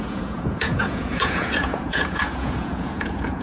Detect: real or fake fake